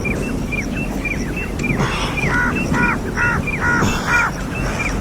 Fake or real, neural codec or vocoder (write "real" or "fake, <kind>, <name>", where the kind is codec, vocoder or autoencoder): real